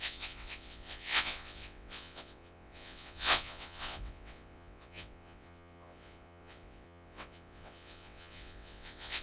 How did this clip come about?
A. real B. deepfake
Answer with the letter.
B